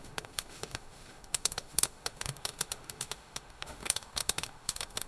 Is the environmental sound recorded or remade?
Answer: remade